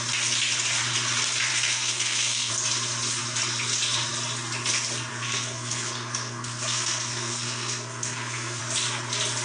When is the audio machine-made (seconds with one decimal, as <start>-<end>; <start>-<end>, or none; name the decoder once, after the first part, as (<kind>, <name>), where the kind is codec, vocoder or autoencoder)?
1.5-2.5 (codec, SNAC); 5.1-8.6